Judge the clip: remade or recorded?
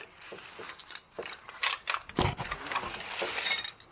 recorded